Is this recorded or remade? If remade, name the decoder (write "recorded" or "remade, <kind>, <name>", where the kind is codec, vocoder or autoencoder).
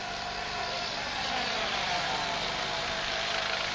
remade, vocoder, BigVGAN v2